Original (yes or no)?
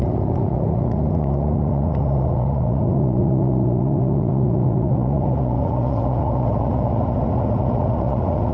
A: no